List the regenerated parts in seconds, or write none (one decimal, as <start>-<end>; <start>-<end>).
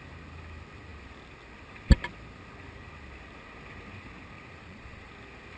4.6-5.1